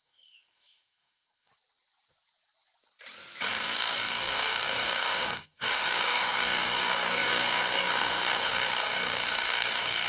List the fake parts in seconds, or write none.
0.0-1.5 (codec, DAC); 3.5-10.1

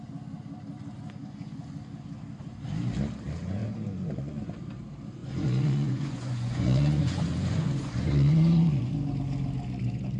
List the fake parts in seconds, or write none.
1.2-1.7 (vocoder, Vocos); 3.6-4.5; 5.2-8.9